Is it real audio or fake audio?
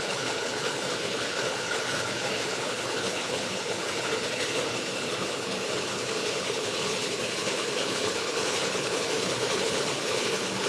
fake